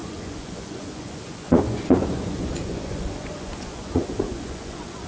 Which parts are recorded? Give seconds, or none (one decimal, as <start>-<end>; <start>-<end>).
none